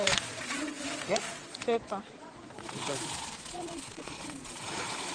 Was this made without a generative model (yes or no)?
no